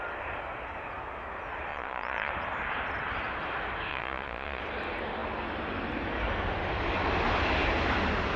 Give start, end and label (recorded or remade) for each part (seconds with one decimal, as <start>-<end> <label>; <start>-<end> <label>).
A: 0.0-1.7 recorded; 1.7-2.3 remade; 2.3-3.9 recorded; 3.9-4.6 remade; 4.6-8.4 recorded